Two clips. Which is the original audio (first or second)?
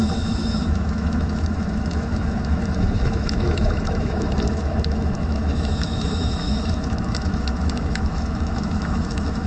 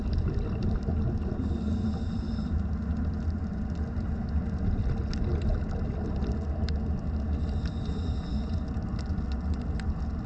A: second